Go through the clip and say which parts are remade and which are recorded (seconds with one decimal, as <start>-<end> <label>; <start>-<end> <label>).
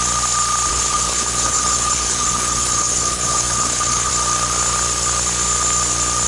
0.0-0.7 recorded; 0.7-4.1 remade; 4.1-6.3 recorded